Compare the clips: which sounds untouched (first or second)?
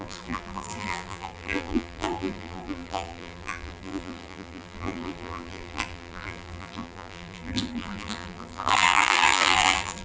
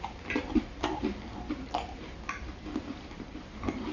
second